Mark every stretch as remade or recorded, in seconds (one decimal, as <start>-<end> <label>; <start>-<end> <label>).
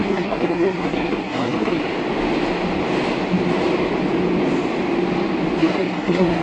0.0-1.8 remade; 1.8-5.6 recorded; 5.6-6.4 remade